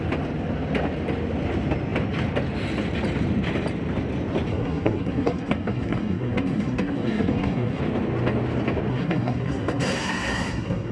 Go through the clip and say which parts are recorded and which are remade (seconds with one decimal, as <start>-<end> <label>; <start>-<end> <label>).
0.0-4.5 recorded; 4.5-7.8 remade; 7.8-8.9 recorded; 8.9-10.9 remade